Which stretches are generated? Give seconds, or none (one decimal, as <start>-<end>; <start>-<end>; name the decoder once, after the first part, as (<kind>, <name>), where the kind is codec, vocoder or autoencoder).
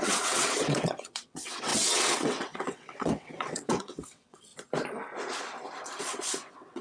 0.0-4.5 (vocoder, WaveNeXt); 6.0-6.8